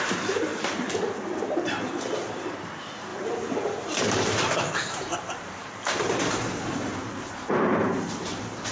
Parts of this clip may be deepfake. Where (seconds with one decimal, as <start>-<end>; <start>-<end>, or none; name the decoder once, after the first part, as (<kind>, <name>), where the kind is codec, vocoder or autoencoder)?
0.0-0.5 (vocoder, BigVGAN v2); 1.2-3.1; 4.0-6.9; 7.8-8.7